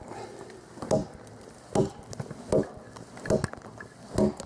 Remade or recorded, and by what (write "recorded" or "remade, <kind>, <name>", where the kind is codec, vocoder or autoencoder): recorded